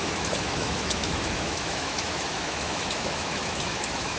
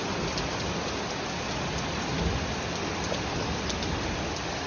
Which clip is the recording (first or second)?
second